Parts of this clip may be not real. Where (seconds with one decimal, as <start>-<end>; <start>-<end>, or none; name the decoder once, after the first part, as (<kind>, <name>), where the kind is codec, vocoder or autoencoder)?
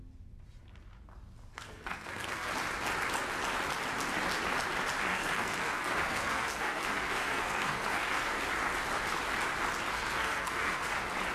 1.5-2.5 (codec, SNAC); 5.1-8.4; 9.9-10.9